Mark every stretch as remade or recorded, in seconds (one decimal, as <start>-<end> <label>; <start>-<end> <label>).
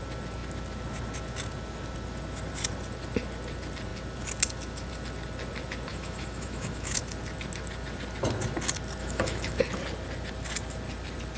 0.0-5.9 recorded; 5.9-7.0 remade; 7.0-9.0 recorded; 9.0-9.6 remade; 9.6-11.4 recorded